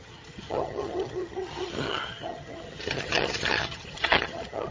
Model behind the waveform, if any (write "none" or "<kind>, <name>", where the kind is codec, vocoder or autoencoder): vocoder, HiFi-GAN